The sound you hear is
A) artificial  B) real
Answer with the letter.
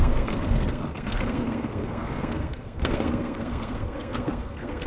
A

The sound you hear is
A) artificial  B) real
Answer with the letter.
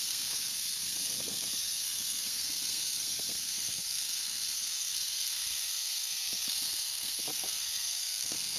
A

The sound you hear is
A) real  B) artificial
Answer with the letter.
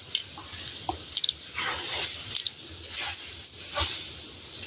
A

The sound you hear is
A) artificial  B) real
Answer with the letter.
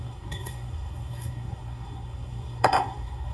A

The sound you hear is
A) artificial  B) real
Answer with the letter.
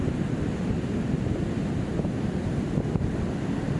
B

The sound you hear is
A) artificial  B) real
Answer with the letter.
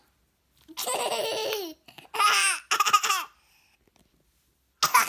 B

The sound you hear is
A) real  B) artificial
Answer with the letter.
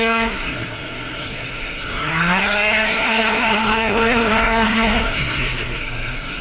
B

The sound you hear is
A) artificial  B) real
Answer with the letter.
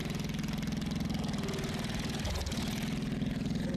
B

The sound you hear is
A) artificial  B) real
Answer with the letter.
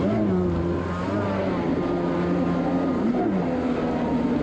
B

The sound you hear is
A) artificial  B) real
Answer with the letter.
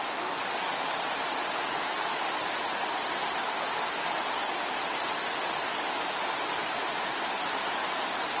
B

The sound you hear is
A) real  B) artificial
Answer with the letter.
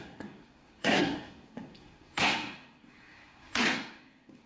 B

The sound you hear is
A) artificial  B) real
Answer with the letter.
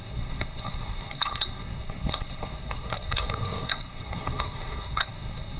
A